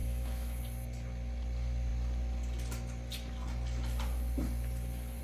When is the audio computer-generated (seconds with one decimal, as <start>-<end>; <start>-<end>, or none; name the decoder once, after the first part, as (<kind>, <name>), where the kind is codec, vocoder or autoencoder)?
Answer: 0.0-0.6 (autoencoder, DAC-VAE)

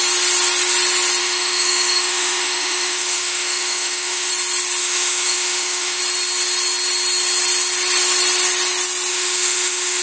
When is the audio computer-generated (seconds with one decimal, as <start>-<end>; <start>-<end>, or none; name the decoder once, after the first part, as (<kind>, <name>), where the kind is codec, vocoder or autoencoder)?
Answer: 1.2-4.3 (autoencoder, DAC-VAE); 4.8-6.0; 9.1-10.0

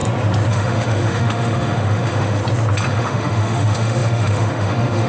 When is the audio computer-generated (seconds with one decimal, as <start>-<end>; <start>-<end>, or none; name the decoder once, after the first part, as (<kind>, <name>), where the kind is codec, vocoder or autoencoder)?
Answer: 0.5-2.4 (autoencoder, DAC-VAE); 2.9-5.1

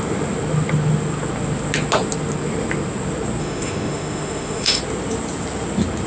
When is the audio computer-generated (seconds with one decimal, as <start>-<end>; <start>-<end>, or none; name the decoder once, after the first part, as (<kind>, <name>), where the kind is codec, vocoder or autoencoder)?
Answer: 3.4-4.8 (autoencoder, DAC-VAE)